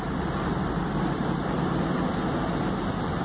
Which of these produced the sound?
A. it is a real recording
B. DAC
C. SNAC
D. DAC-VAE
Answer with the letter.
A